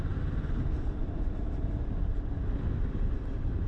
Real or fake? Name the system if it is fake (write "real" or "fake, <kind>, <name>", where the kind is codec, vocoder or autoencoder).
real